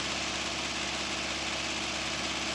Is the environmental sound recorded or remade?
recorded